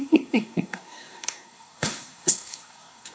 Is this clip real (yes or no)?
no